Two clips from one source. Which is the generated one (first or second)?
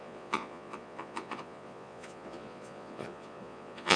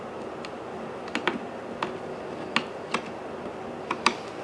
first